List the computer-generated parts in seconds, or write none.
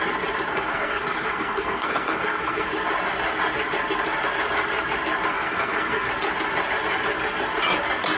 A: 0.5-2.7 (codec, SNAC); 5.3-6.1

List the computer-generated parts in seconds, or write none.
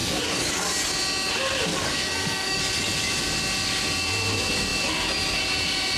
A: 0.0-0.6 (codec, DAC); 1.7-2.6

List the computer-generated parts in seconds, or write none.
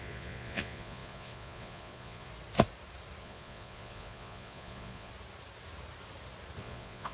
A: 0.0-2.3 (vocoder, Vocos); 3.2-5.1; 6.6-7.1